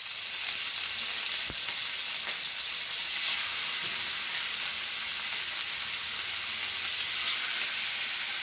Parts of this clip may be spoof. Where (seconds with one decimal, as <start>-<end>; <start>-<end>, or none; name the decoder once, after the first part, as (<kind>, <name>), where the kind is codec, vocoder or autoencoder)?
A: none